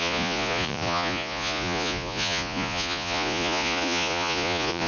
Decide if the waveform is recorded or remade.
remade